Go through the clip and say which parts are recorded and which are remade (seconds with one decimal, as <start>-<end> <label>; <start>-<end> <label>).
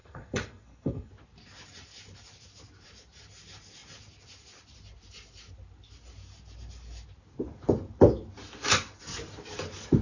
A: 0.0-1.1 remade; 1.1-10.0 recorded